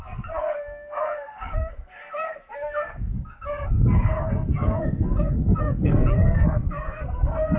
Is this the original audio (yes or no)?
no